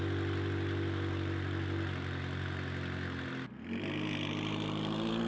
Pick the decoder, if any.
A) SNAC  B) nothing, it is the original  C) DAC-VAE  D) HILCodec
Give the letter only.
B